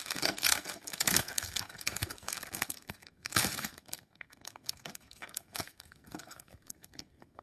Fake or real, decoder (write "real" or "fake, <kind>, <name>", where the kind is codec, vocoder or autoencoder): fake, codec, SNAC